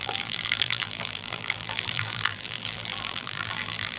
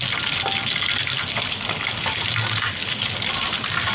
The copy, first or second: first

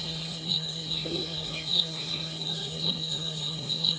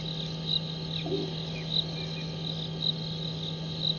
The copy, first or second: first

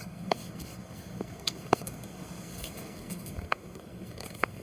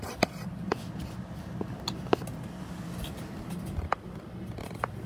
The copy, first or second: first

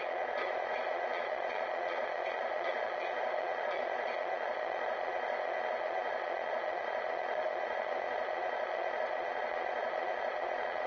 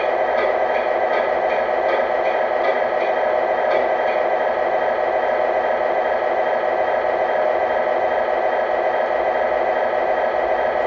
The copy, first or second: first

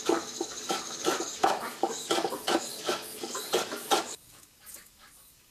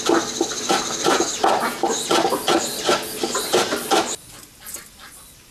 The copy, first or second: first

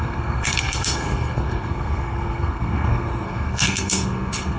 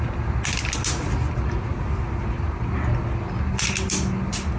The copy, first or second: first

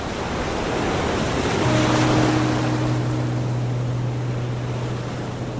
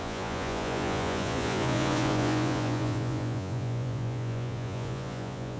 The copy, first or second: second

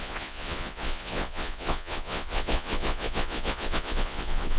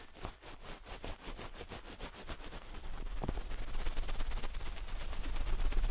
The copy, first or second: first